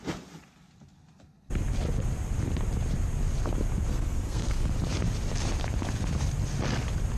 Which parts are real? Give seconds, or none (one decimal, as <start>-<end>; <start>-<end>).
0.0-3.9; 4.7-7.2